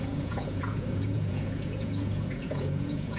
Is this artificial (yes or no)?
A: yes